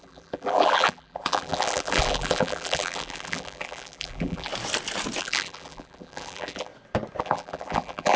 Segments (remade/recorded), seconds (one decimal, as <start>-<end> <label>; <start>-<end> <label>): 0.0-4.5 remade; 4.5-5.2 recorded; 5.2-6.7 remade; 6.7-7.2 recorded; 7.2-8.2 remade